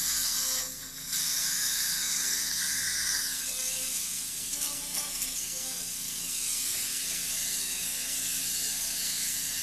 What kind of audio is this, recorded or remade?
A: remade